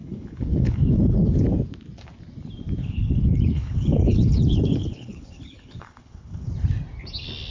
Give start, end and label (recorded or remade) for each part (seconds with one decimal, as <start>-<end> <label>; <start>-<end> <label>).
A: 0.0-1.4 remade; 1.4-2.8 recorded; 2.8-6.5 remade; 6.5-7.5 recorded

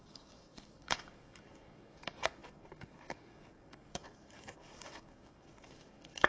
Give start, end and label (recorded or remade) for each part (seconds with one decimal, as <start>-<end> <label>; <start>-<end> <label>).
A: 0.0-6.3 remade

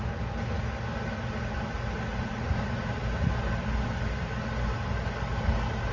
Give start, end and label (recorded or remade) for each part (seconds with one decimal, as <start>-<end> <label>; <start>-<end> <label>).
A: 0.0-2.1 recorded; 2.1-5.9 remade

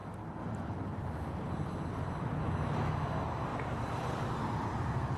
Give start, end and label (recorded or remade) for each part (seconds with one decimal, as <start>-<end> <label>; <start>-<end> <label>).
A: 0.0-3.5 recorded; 3.5-4.3 remade; 4.3-5.2 recorded

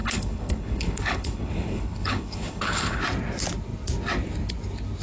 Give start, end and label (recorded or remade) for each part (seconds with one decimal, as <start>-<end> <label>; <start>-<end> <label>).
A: 0.0-3.0 remade; 3.0-5.0 recorded

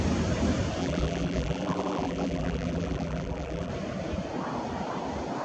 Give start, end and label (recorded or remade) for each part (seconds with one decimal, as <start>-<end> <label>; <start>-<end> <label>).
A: 0.0-0.8 recorded; 0.8-3.7 remade; 3.7-5.4 recorded